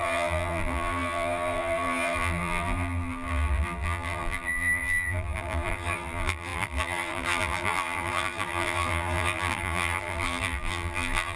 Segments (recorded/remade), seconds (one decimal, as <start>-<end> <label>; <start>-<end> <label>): 0.0-11.4 remade